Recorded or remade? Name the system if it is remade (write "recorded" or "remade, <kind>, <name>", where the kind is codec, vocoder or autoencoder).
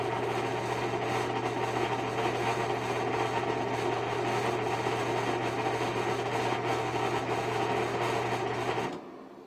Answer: recorded